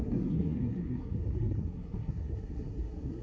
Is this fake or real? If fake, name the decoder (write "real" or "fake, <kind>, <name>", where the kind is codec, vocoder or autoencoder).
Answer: fake, codec, SNAC